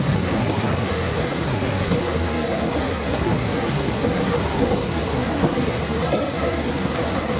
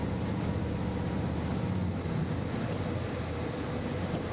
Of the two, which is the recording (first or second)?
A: second